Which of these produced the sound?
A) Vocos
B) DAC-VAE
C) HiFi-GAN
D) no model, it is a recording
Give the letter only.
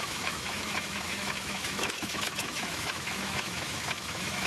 B